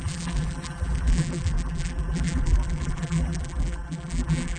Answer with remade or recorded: remade